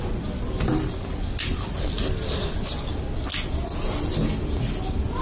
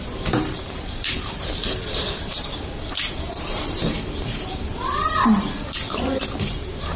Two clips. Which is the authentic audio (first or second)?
first